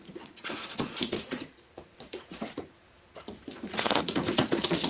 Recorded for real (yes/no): no